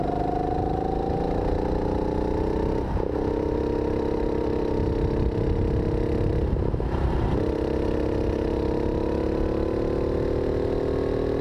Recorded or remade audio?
recorded